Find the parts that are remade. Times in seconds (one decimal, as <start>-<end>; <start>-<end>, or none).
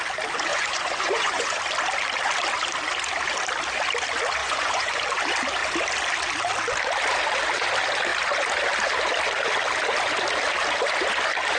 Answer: 0.5-1.6; 4.4-5.0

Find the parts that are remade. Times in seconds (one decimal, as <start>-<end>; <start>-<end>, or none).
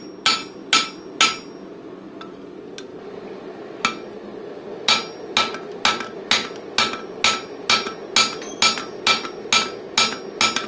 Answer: none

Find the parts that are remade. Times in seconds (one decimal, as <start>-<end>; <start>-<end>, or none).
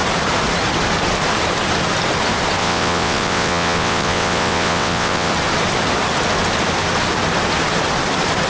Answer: 2.6-5.3